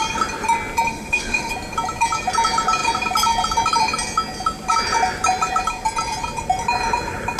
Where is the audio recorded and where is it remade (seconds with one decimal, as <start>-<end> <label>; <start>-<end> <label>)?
0.0-0.9 recorded; 0.9-1.5 remade; 1.5-7.4 recorded